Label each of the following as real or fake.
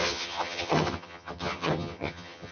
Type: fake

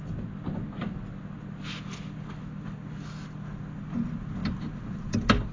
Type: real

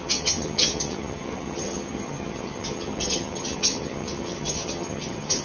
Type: fake